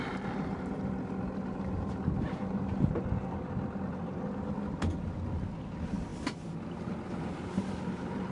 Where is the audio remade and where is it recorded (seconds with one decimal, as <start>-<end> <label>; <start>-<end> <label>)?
0.0-8.3 recorded